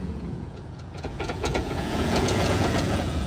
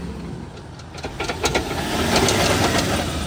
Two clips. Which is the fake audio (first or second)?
first